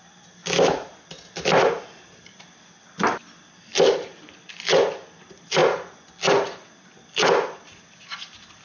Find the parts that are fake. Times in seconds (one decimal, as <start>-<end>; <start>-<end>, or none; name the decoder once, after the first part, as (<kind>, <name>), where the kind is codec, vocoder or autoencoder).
none

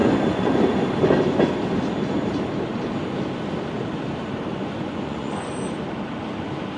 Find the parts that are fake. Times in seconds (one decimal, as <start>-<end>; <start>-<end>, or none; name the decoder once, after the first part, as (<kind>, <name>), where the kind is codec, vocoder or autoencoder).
0.0-0.5 (vocoder, Vocos); 4.5-5.5

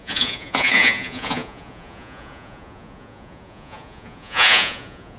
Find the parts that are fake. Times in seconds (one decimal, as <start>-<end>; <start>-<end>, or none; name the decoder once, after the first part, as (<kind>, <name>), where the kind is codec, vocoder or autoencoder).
0.0-5.2 (vocoder, Vocos)

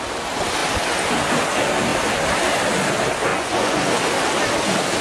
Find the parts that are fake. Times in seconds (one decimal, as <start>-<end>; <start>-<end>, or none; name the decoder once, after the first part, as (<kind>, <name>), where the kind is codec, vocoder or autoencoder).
3.3-3.9 (vocoder, Vocos)

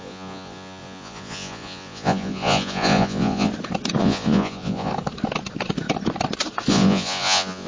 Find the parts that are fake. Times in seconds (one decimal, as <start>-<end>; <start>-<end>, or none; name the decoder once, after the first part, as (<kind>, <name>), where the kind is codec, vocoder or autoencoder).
0.0-3.5 (vocoder, Vocos); 4.0-4.9; 6.7-7.7

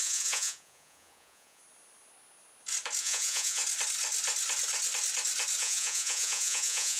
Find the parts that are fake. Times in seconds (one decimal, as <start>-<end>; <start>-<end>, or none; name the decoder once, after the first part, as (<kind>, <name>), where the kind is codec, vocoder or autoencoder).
0.0-1.6 (vocoder, Vocos); 3.0-3.6; 5.6-7.0

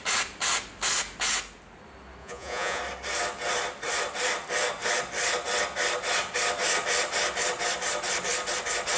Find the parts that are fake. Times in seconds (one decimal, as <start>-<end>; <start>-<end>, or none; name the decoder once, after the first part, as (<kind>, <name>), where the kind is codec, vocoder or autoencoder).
2.2-2.8 (vocoder, Vocos)